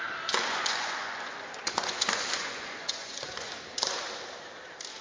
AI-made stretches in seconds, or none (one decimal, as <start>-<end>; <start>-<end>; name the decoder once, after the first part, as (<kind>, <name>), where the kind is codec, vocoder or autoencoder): 0.5-3.5 (vocoder, Vocos)